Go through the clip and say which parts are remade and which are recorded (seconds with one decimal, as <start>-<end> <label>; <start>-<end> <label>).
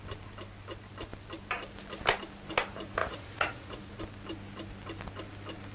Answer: 0.0-3.0 recorded; 3.0-4.0 remade; 4.0-5.7 recorded